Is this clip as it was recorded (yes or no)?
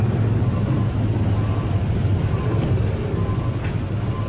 yes